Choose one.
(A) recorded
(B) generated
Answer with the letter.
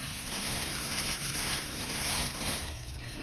B